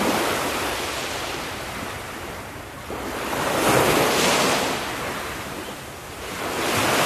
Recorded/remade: recorded